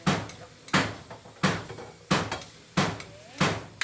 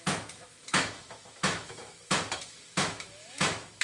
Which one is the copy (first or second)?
second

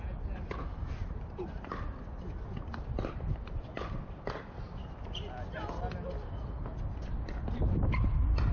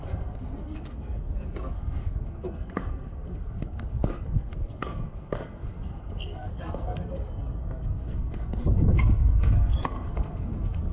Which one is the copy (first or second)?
second